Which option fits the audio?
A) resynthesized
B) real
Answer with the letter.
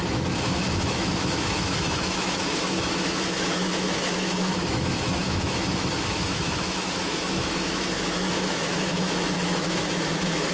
A